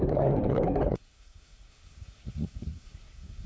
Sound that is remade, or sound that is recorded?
remade